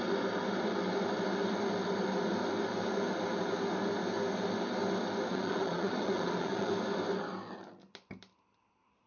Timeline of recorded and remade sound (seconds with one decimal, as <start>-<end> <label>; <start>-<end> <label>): 0.0-5.3 recorded; 5.3-6.7 remade; 6.7-9.1 recorded